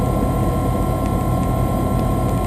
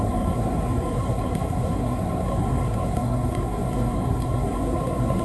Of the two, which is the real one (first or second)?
first